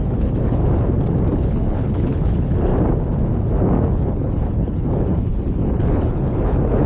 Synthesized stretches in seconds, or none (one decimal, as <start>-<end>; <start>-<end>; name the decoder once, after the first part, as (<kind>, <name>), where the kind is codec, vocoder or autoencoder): 0.0-0.6 (codec, HILCodec); 1.4-2.7; 3.9-6.9

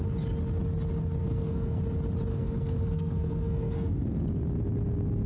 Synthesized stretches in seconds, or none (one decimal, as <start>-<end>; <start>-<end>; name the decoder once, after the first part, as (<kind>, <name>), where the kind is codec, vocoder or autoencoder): 1.2-1.8 (codec, SNAC); 2.3-4.2

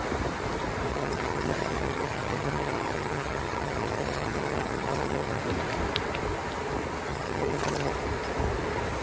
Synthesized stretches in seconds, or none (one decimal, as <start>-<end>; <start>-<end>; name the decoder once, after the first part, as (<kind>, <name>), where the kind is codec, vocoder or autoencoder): 0.9-5.4 (vocoder, HiFi-GAN); 7.1-7.9

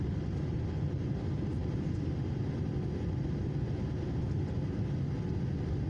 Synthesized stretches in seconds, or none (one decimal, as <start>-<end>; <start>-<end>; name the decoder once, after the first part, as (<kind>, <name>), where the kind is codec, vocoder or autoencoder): none

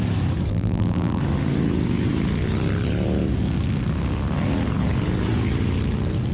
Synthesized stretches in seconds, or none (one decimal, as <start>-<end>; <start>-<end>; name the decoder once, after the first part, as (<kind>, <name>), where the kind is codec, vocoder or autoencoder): 0.5-1.2 (vocoder, BigVGAN v2)